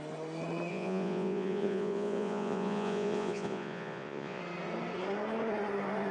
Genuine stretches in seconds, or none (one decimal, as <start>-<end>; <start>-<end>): 0.0-0.7; 4.4-6.1